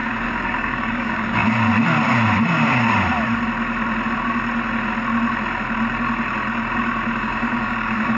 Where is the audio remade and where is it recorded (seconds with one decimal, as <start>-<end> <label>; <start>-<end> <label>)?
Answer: 0.0-1.4 remade; 1.4-2.4 recorded; 2.4-2.9 remade; 2.9-7.2 recorded; 7.2-8.2 remade